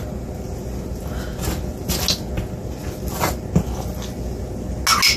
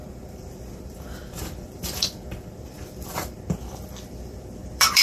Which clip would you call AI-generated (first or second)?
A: second